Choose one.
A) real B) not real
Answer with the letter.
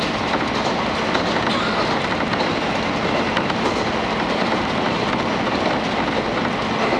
A